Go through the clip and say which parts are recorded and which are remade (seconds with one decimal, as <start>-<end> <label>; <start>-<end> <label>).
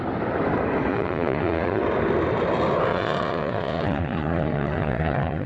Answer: 0.0-0.9 recorded; 0.9-1.8 remade; 1.8-2.9 recorded; 2.9-5.5 remade